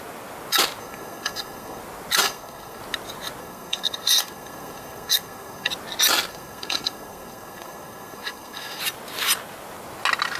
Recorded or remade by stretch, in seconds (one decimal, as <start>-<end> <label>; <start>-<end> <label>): 0.0-0.8 recorded; 0.8-1.8 remade; 1.8-2.2 recorded; 2.2-2.8 remade; 2.8-3.4 recorded; 3.4-5.7 remade; 5.7-6.3 recorded; 6.3-8.8 remade; 8.8-10.4 recorded